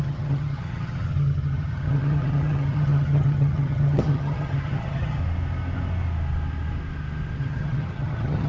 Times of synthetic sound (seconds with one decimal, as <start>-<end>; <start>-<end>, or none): 0.0-5.2; 7.4-8.5